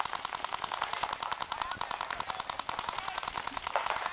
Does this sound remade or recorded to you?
recorded